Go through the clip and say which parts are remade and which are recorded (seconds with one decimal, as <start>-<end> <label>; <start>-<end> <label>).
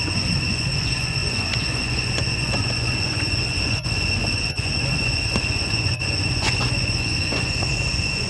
0.0-8.3 remade